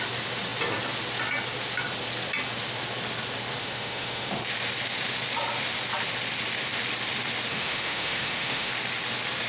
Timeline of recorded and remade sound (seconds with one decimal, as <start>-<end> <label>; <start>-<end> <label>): 0.0-3.6 recorded; 3.6-4.3 remade; 4.3-7.5 recorded; 7.5-8.7 remade; 8.7-9.5 recorded